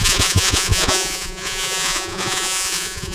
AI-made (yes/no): yes